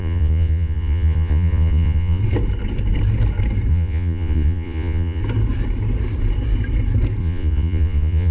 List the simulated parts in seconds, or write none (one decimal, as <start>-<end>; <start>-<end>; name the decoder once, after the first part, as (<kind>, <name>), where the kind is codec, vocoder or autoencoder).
0.0-2.2 (vocoder, Vocos); 3.7-5.2; 7.2-8.3